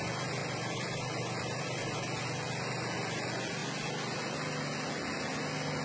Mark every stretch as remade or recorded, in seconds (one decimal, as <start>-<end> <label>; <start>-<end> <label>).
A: 0.0-0.4 recorded; 0.4-2.3 remade; 2.3-5.8 recorded